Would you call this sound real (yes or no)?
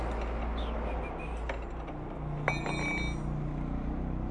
yes